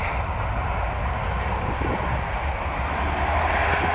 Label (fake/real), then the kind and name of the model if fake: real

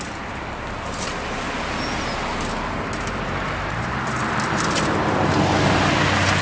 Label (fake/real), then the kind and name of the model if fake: real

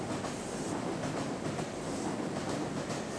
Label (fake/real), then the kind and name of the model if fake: real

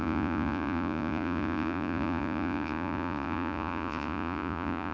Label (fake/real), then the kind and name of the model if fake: fake, vocoder, Vocos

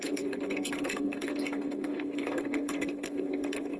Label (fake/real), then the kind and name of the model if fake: fake, codec, SNAC